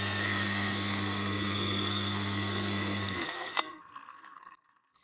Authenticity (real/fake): fake